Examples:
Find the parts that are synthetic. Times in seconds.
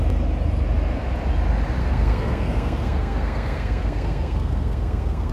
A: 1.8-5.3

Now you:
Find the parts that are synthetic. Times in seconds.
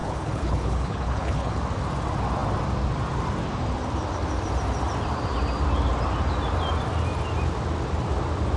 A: 0.0-1.6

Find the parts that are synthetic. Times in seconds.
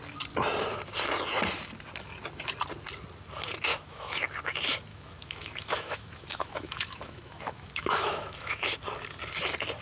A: 3.7-4.3; 4.9-8.7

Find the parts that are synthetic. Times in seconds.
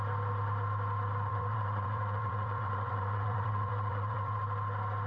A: 1.3-4.4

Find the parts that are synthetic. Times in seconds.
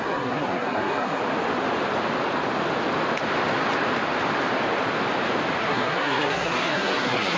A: 0.0-1.2; 5.6-7.4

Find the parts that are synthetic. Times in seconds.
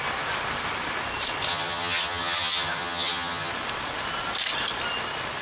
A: 1.5-3.5